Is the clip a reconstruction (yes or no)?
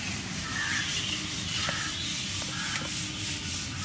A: no